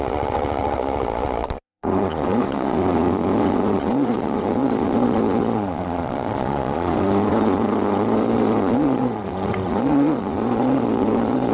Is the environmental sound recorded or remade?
remade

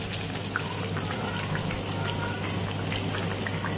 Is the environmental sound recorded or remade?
recorded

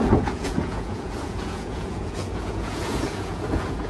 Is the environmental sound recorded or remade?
remade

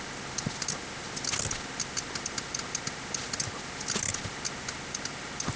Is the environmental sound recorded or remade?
recorded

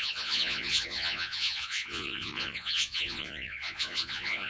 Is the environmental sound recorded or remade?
remade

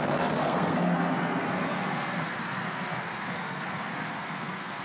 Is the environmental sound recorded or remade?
remade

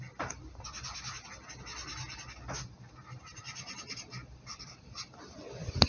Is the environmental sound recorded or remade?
recorded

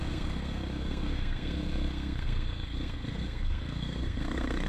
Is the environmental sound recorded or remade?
remade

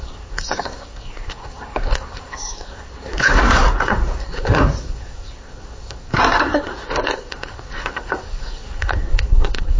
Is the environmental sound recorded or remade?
remade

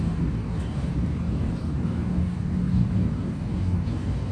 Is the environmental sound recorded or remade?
remade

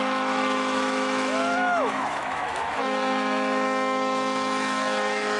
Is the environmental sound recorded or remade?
remade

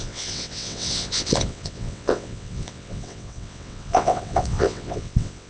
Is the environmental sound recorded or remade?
remade